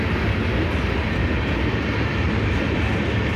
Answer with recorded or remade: recorded